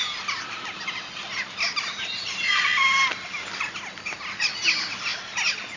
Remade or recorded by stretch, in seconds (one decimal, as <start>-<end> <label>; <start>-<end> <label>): 0.0-5.8 recorded